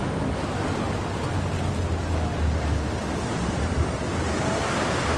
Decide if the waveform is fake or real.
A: real